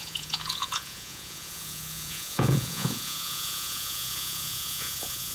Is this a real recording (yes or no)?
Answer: no